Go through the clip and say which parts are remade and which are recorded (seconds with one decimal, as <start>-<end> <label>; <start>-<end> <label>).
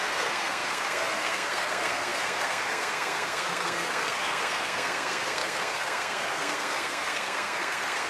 0.0-8.1 remade